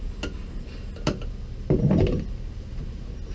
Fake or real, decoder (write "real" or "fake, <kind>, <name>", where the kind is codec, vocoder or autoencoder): real